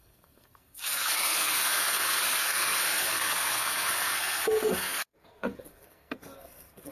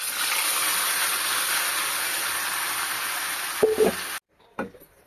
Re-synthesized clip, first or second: first